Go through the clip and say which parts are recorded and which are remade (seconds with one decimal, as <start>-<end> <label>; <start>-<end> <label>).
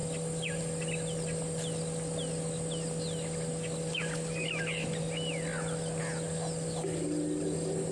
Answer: 0.0-7.9 recorded